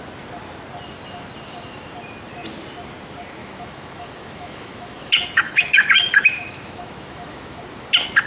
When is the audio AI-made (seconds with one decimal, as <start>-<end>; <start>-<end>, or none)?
3.4-7.6